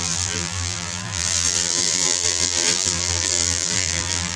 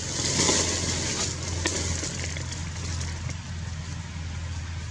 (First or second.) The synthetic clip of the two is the first